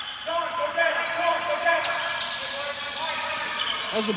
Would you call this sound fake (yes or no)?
yes